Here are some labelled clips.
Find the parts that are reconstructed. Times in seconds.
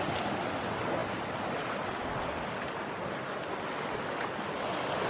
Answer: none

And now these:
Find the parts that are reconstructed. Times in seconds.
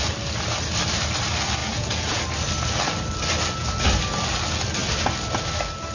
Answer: 1.6-2.2 (vocoder, Vocos)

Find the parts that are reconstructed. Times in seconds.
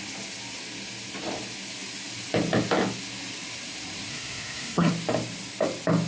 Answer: 4.1-4.9 (codec, SNAC)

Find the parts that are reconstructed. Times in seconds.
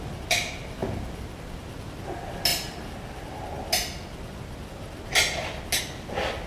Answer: none